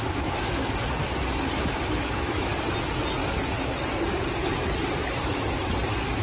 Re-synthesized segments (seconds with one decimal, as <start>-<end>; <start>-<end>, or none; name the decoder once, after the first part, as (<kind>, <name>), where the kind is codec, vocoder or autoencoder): 0.0-0.6 (autoencoder, DAC-VAE); 1.6-2.5